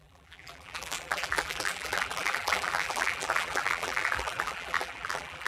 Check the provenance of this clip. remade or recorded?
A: remade